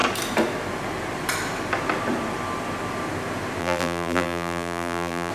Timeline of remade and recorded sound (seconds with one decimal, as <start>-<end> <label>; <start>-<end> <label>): 0.0-3.6 recorded; 3.6-5.3 remade